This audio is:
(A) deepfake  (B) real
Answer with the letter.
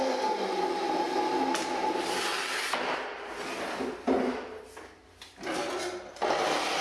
B